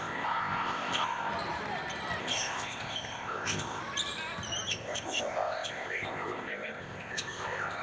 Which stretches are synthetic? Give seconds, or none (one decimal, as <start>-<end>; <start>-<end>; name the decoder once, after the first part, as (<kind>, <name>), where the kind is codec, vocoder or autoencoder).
0.0-1.3 (codec, ZipCodec); 2.2-3.8; 4.7-7.8